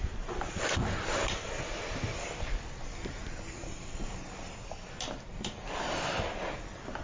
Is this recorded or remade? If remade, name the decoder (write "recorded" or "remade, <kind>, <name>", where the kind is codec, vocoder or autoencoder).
recorded